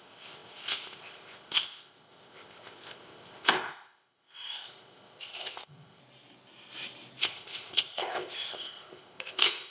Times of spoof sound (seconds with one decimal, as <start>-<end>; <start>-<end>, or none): 0.0-6.0; 7.2-9.7